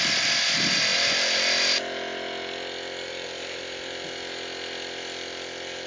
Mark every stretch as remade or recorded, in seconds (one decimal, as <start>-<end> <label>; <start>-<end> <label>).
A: 0.0-5.9 recorded